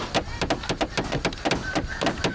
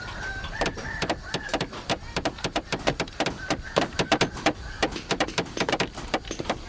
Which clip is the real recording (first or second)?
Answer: first